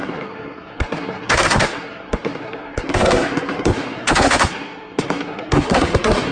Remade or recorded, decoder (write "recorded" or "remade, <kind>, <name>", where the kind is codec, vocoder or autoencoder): remade, codec, SNAC